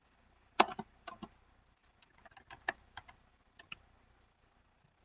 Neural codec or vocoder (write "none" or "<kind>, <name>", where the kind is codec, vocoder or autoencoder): none